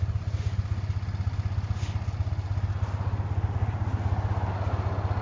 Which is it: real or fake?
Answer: real